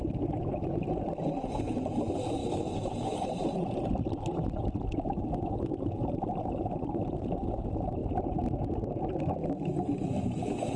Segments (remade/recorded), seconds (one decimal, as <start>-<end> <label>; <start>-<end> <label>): 0.0-10.8 recorded